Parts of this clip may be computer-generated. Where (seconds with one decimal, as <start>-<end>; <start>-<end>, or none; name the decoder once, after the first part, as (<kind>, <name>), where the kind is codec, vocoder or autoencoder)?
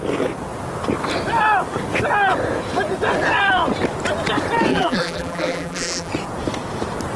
4.7-6.1 (vocoder, BigVGAN v2)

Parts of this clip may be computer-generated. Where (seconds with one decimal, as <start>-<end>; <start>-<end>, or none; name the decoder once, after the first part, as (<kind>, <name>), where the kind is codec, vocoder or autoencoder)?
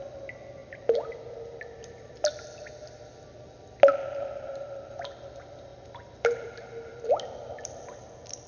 0.6-2.4 (vocoder, BigVGAN v2); 5.7-7.0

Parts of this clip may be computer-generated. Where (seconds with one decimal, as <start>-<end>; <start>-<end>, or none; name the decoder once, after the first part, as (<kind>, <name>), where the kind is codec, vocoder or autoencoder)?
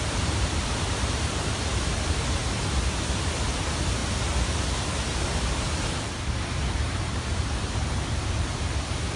0.0-2.4 (vocoder, BigVGAN v2); 3.1-9.2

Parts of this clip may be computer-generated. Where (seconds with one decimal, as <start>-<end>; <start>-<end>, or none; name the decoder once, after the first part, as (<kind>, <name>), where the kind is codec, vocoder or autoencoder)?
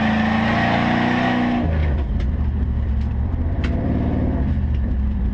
1.8-5.3 (vocoder, BigVGAN v2)